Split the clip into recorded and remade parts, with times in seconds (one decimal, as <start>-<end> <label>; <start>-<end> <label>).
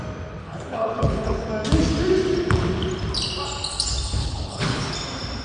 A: 0.0-0.4 recorded; 0.4-1.5 remade; 1.5-4.2 recorded; 4.2-4.9 remade; 4.9-5.4 recorded